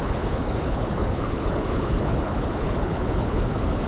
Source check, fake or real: fake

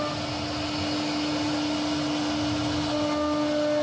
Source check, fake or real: real